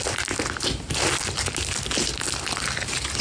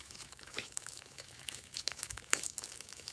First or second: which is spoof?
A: second